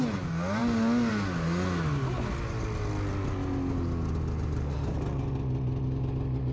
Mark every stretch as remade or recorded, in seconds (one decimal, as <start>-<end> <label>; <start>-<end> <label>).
0.0-6.5 recorded